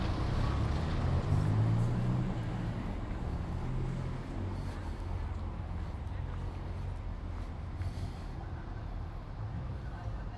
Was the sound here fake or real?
real